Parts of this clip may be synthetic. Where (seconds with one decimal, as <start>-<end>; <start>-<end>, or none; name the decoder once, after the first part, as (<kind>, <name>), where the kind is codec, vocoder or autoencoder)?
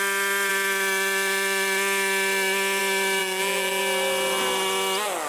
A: 3.2-3.8 (vocoder, Vocos)